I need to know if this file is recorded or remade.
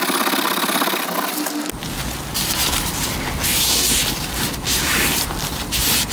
recorded